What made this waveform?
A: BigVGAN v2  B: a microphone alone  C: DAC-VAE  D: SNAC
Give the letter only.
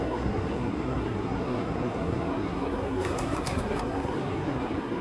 D